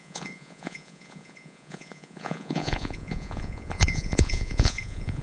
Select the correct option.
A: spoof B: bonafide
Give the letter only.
A